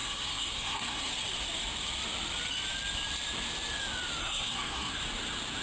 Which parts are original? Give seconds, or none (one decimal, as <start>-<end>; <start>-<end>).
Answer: 1.1-4.2; 5.0-5.6